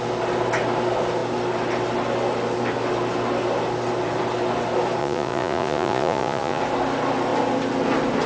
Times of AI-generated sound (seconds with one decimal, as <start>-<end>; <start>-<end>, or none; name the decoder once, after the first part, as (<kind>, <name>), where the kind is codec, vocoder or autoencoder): 5.0-6.6 (vocoder, Vocos)